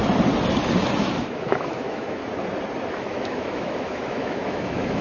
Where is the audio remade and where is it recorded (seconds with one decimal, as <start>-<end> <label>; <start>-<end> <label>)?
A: 0.0-1.0 recorded; 1.0-2.2 remade; 2.2-2.9 recorded; 2.9-5.0 remade